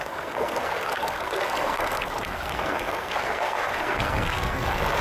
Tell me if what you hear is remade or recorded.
remade